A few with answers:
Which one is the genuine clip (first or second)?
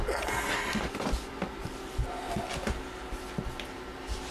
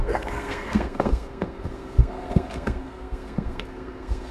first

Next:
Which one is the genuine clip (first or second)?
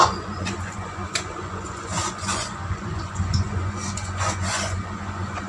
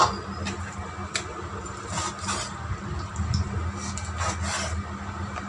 second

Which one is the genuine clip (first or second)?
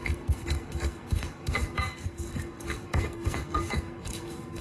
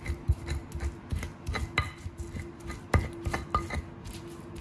second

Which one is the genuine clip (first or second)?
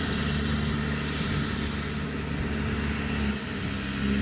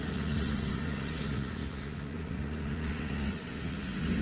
first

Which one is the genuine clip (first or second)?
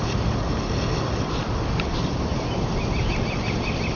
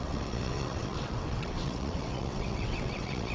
first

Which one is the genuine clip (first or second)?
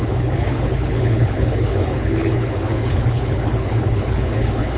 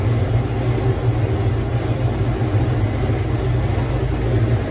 second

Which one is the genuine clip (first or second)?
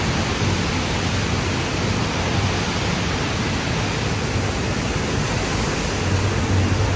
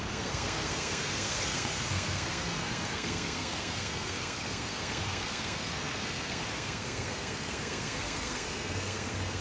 first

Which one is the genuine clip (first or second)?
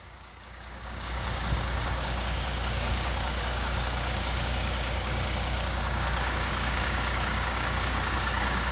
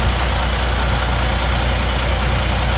second